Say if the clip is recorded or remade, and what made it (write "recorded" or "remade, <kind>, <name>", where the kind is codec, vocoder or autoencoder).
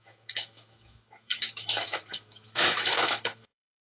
remade, autoencoder, DAC-VAE